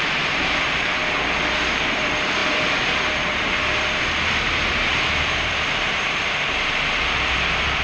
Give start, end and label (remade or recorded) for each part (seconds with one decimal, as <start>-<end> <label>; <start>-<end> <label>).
0.0-1.0 remade; 1.0-1.7 recorded; 1.7-7.8 remade

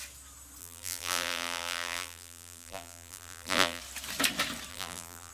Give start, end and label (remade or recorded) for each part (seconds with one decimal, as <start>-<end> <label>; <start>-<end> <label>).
0.0-0.6 recorded; 0.6-3.8 remade; 3.8-4.7 recorded; 4.7-5.3 remade

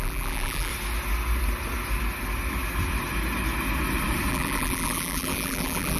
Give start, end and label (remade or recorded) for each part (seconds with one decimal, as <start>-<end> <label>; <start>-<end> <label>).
0.0-0.7 remade; 0.7-4.3 recorded; 4.3-6.0 remade

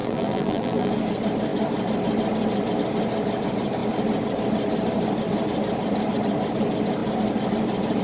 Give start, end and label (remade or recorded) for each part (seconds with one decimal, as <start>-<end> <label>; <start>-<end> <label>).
0.0-0.9 remade; 0.9-8.0 recorded